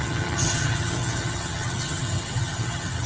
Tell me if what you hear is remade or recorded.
remade